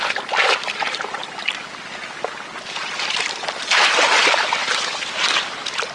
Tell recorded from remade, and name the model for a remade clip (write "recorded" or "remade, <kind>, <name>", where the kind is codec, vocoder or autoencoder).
recorded